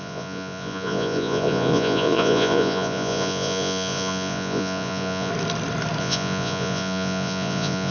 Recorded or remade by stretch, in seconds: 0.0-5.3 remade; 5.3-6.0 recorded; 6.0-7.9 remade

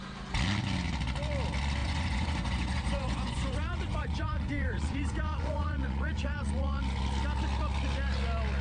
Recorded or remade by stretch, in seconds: 0.0-1.8 recorded; 1.8-6.8 remade; 6.8-8.6 recorded

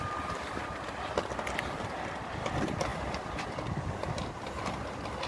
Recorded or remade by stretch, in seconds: 0.0-5.3 recorded

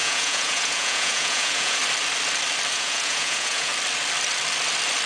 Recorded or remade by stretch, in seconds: 0.0-1.8 remade; 1.8-2.7 recorded; 2.7-3.7 remade; 3.7-5.1 recorded

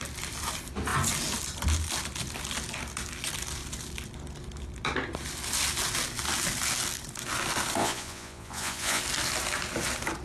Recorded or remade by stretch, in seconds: 0.0-7.8 recorded; 7.8-9.0 remade; 9.0-10.2 recorded

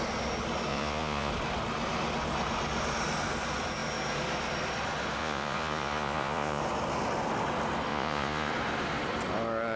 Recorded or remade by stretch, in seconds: 0.0-0.7 recorded; 0.7-1.3 remade; 1.3-5.2 recorded; 5.2-6.6 remade; 6.6-7.9 recorded; 7.9-8.5 remade; 8.5-9.8 recorded